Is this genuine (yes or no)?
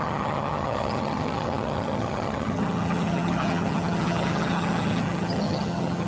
no